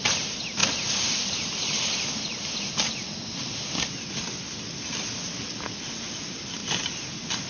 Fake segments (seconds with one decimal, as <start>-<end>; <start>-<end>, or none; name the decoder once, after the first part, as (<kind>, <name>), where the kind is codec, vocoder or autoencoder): none